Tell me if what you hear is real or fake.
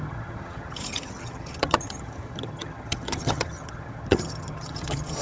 fake